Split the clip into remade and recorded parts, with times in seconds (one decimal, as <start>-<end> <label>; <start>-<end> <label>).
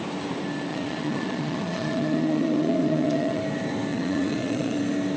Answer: 0.0-0.7 recorded; 0.7-3.4 remade; 3.4-3.9 recorded; 3.9-4.8 remade; 4.8-5.2 recorded